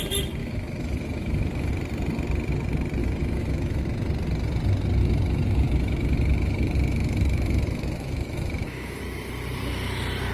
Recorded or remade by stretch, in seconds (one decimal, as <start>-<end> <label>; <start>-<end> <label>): 0.0-0.4 recorded; 0.4-1.7 remade; 1.7-3.0 recorded; 3.0-3.8 remade; 3.8-5.0 recorded; 5.0-9.0 remade; 9.0-10.3 recorded